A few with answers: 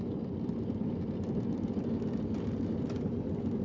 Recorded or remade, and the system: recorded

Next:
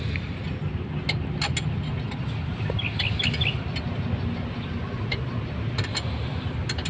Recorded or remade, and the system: recorded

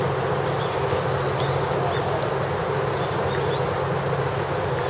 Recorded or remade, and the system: recorded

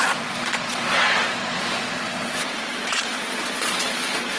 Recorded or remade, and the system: remade, vocoder, Vocos